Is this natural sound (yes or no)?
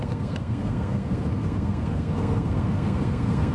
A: no